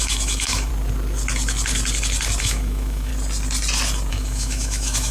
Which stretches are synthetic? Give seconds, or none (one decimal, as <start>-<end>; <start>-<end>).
0.0-0.7; 2.4-3.1; 4.1-5.1